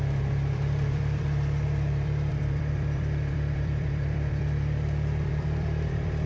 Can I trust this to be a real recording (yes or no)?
no